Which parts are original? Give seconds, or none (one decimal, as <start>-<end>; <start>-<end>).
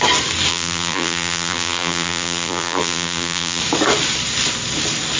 0.0-0.5; 3.6-5.2